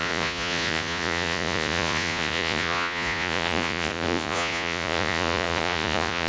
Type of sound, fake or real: fake